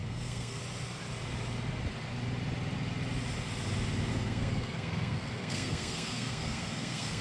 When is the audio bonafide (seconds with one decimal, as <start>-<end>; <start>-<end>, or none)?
0.6-4.1